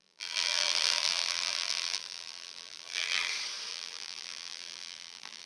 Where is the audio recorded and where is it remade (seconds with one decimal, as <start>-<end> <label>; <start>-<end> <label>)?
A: 0.0-3.3 remade; 3.3-3.7 recorded; 3.7-5.5 remade